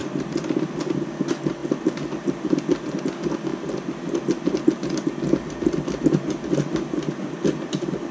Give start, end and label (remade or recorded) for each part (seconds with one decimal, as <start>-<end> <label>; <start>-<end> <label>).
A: 0.0-8.1 recorded